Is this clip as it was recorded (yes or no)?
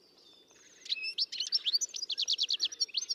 yes